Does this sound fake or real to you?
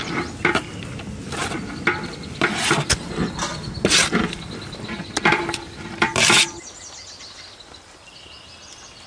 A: real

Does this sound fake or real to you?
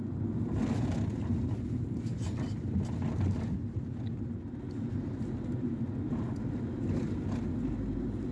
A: real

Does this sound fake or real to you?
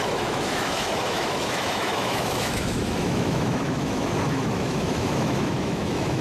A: fake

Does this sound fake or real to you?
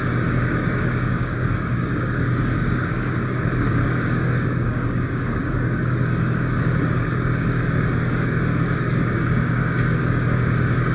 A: fake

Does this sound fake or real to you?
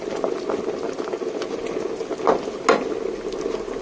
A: real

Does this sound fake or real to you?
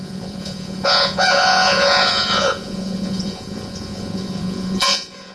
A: fake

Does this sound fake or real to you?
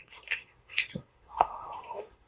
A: fake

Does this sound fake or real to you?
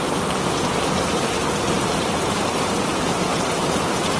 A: fake